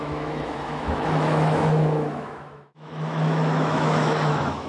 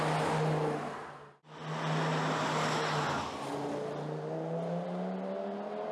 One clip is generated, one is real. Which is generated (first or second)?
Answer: first